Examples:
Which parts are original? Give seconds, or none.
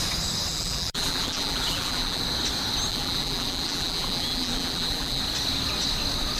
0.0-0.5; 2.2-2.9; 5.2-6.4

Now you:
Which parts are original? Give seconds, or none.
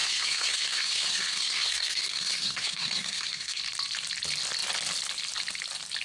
3.6-6.0